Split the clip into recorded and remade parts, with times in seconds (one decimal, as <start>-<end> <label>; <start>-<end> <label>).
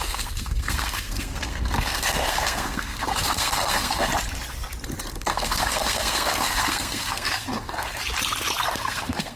0.0-4.1 remade; 4.1-5.1 recorded; 5.1-8.0 remade; 8.0-8.7 recorded; 8.7-9.4 remade